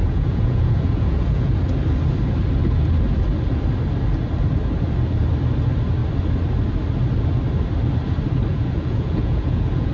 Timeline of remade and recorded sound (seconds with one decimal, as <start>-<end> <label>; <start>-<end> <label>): 0.0-1.5 remade; 1.5-8.5 recorded; 8.5-9.9 remade